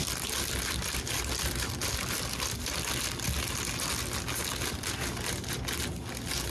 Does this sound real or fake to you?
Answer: real